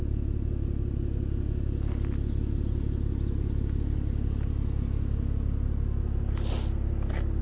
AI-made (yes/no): no